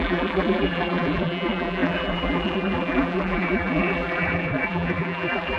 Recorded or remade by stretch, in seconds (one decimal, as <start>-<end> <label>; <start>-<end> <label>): 0.0-5.6 remade